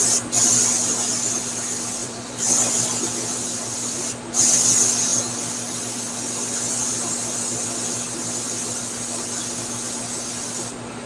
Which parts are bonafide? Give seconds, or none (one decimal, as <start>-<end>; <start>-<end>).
0.0-2.0; 4.4-11.1